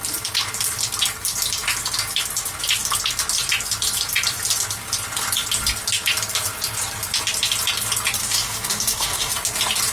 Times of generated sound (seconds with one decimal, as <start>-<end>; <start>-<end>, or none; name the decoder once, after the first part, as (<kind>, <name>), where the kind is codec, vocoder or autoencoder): 8.2-9.3 (codec, DAC)